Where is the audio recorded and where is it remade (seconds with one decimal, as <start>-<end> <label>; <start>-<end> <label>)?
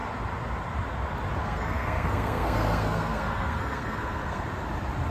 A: 0.0-1.4 recorded; 1.4-4.4 remade; 4.4-5.1 recorded